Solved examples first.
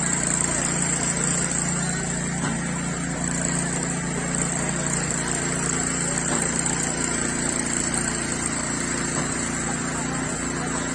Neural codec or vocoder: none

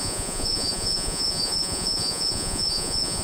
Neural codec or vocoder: vocoder, Vocos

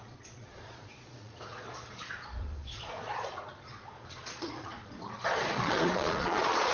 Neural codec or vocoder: vocoder, Vocos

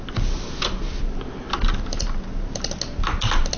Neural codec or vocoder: none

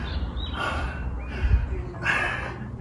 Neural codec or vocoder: none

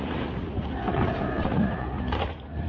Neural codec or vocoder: vocoder, Vocos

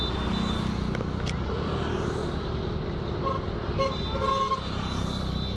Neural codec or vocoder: none